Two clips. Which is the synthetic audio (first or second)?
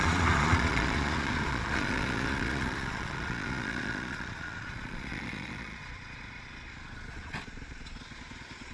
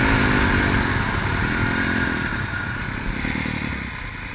first